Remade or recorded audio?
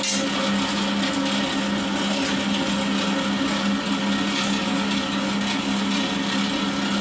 recorded